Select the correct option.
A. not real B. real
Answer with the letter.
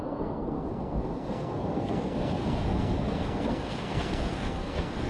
A